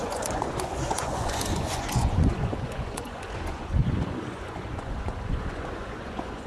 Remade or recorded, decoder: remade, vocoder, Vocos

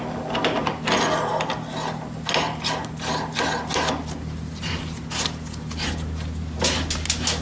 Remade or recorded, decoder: recorded